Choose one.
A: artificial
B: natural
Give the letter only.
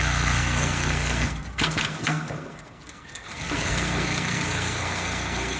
A